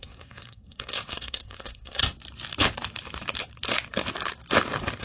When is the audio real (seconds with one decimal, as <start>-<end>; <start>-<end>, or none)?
2.0-5.0